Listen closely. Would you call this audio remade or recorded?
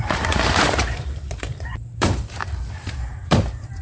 remade